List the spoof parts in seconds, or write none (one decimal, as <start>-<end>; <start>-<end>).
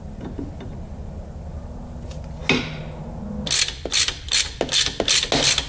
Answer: none